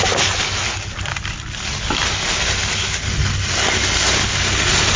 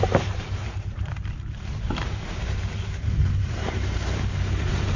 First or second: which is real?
first